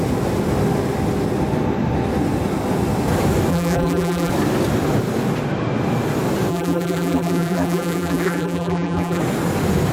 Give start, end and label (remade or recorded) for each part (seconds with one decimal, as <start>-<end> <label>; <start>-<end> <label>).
0.0-3.5 recorded; 3.5-4.3 remade; 4.3-6.5 recorded; 6.5-9.2 remade; 9.2-9.9 recorded